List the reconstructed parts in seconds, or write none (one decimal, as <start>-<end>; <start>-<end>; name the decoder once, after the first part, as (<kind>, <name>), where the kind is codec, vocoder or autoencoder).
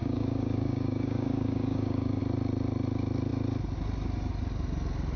0.0-2.2 (codec, DAC)